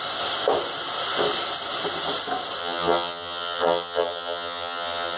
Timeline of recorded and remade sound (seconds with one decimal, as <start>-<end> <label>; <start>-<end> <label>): 0.0-2.6 recorded; 2.6-5.2 remade